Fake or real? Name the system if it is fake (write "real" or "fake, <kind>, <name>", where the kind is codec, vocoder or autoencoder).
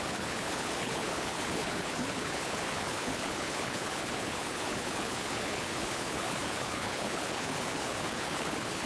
fake, codec, HILCodec